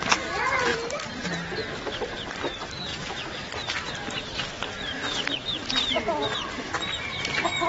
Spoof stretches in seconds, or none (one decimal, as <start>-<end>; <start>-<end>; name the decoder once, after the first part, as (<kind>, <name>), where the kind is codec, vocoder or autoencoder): none